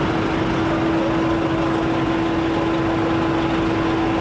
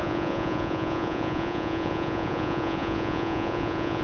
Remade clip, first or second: second